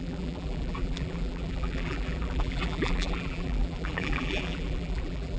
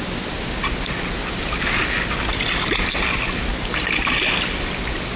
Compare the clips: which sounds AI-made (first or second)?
first